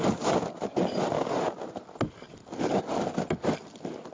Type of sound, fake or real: real